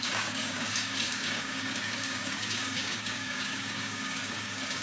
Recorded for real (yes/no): no